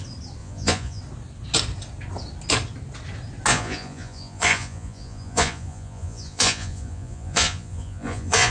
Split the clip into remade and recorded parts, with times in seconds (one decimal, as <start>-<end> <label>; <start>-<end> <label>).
0.0-0.4 recorded; 0.4-1.0 remade; 1.0-3.5 recorded; 3.5-8.5 remade

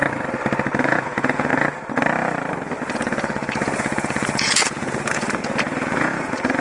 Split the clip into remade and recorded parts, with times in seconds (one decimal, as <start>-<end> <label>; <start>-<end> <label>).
0.0-0.8 recorded; 0.8-1.5 remade; 1.5-2.9 recorded; 2.9-6.6 remade

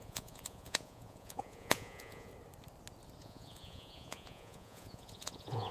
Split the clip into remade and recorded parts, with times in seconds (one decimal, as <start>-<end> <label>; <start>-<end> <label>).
0.0-2.3 remade; 2.3-3.2 recorded; 3.2-5.7 remade

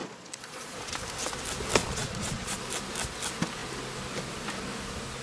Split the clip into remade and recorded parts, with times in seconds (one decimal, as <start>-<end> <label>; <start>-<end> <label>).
0.0-1.0 remade; 1.0-1.8 recorded; 1.8-2.6 remade; 2.6-5.2 recorded

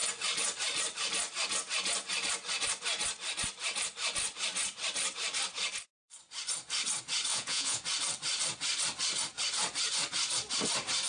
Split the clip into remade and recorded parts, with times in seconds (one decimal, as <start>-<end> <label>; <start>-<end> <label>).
0.0-7.3 recorded; 7.3-7.8 remade; 7.8-11.1 recorded

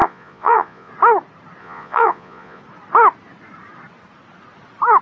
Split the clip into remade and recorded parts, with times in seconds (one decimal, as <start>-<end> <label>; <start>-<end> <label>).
0.0-0.9 remade; 0.9-1.6 recorded; 1.6-2.6 remade; 2.6-5.0 recorded